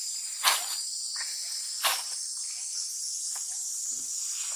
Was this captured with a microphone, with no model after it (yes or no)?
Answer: yes